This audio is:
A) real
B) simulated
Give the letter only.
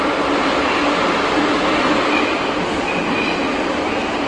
A